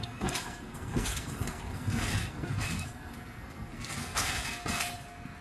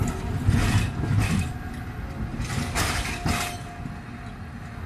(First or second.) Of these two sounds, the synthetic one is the first